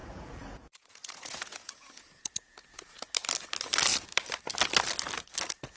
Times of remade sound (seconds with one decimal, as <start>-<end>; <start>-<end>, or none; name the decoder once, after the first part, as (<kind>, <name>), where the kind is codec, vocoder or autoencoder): 0.0-3.0 (vocoder, Vocos)

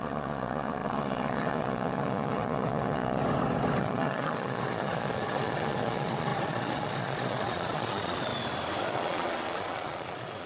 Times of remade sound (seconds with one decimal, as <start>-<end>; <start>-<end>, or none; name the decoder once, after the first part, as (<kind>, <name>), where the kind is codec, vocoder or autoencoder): 0.0-3.2 (vocoder, Vocos); 3.8-8.3; 8.8-10.5